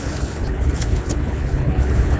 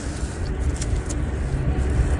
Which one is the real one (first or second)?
second